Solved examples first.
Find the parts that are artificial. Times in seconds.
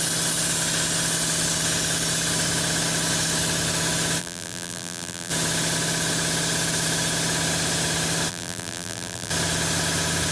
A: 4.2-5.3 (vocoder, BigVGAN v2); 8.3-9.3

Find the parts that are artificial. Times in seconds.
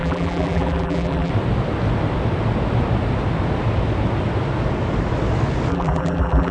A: 0.0-1.3 (vocoder, BigVGAN v2); 5.7-6.5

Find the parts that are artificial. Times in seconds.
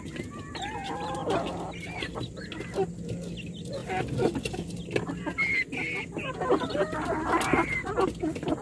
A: none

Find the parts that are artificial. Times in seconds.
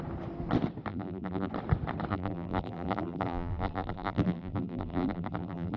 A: 0.9-1.5 (vocoder, BigVGAN v2); 2.1-5.8